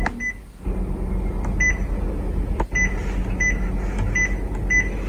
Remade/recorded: recorded